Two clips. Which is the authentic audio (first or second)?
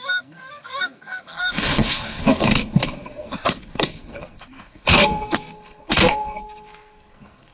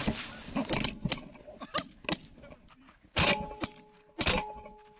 second